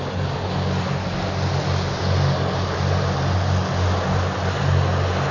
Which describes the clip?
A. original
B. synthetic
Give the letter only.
A